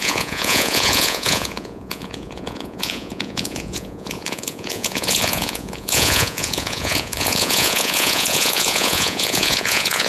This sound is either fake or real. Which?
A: fake